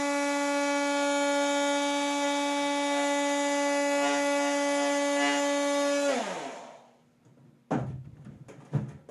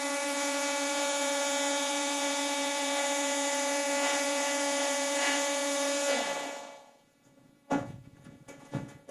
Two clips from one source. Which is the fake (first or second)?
second